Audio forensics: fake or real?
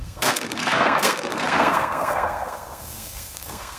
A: fake